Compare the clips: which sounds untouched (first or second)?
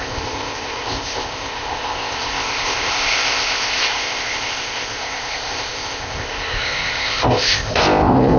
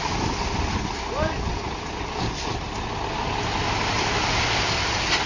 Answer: second